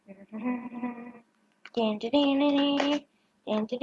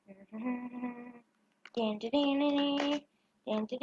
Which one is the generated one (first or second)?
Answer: first